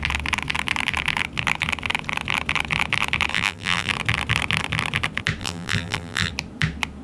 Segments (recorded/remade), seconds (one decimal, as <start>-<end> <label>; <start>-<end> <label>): 0.0-3.3 recorded; 3.3-3.9 remade; 3.9-5.4 recorded; 5.4-6.3 remade; 6.3-7.0 recorded